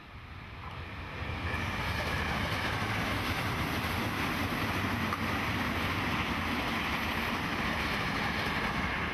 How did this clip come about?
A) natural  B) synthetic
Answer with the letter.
A